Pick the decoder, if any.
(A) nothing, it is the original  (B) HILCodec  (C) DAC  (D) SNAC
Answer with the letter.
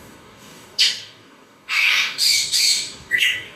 C